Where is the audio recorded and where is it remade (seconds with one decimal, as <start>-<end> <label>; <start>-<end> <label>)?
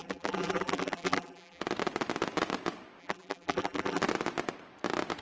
0.0-1.6 remade; 1.6-3.0 recorded; 3.0-4.0 remade; 4.0-5.2 recorded